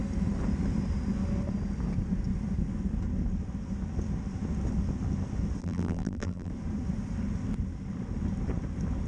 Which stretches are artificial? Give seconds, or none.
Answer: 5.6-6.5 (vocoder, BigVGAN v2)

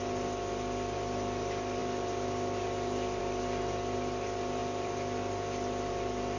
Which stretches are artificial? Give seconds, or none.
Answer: none

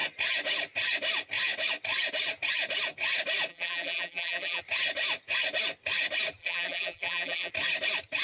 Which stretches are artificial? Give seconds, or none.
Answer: 3.5-4.6 (vocoder, BigVGAN v2); 6.4-7.5

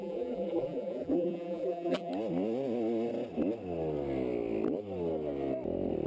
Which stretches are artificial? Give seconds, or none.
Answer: 0.0-2.1 (vocoder, BigVGAN v2)